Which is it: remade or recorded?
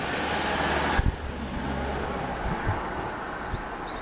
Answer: recorded